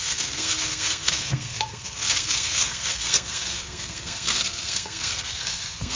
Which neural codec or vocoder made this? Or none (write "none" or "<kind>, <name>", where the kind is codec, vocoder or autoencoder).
codec, SNAC